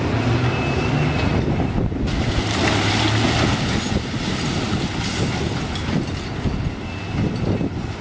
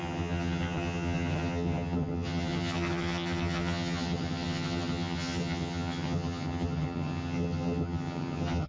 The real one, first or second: first